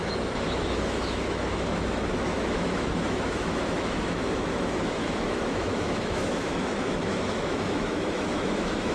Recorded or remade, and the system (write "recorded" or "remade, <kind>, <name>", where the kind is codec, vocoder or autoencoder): remade, autoencoder, DAC-VAE